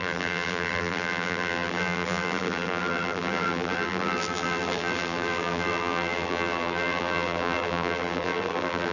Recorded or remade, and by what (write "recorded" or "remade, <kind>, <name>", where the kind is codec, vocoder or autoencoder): remade, vocoder, BigVGAN v2